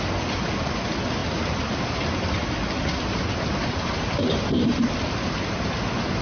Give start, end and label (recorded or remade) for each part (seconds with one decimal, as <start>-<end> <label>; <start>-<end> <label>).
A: 0.0-1.2 recorded; 1.2-4.9 remade; 4.9-6.2 recorded